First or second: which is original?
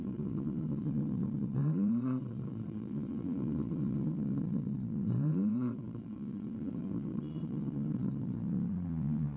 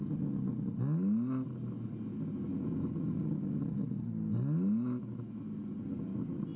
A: second